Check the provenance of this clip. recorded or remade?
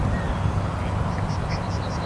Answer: recorded